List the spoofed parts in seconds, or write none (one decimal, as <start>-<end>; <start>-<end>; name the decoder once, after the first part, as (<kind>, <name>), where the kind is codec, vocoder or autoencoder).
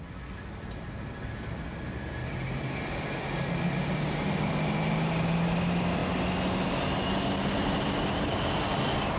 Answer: none